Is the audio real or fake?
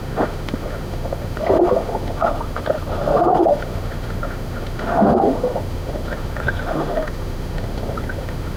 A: fake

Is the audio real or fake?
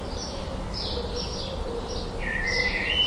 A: real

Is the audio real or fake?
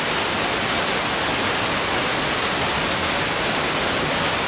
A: real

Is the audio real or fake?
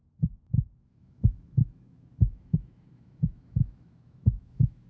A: fake